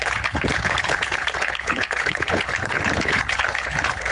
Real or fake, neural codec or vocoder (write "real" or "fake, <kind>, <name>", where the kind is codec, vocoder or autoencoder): fake, codec, HILCodec